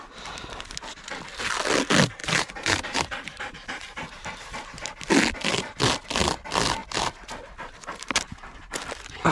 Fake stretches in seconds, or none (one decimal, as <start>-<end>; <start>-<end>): 2.2-5.1